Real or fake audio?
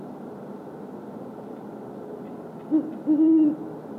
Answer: real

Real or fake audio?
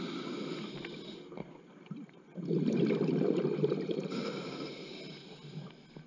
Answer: real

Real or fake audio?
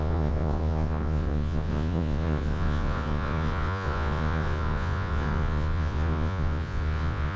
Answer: fake